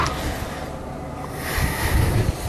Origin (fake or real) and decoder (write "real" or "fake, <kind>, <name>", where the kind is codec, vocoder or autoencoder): real